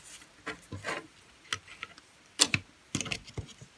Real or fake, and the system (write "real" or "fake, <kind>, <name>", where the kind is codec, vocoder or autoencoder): real